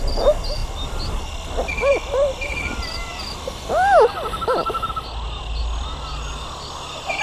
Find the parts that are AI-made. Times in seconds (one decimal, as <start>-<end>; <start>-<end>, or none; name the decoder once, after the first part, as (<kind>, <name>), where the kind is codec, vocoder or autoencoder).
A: none